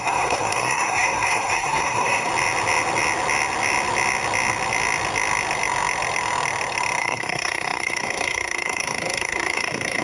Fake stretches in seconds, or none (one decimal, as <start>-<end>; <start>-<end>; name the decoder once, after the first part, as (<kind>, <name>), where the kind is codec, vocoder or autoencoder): 0.0-2.3 (codec, SNAC); 7.0-10.0